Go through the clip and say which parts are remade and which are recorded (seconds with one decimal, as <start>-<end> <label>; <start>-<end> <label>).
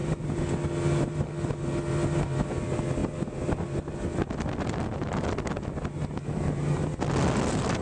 0.0-7.8 recorded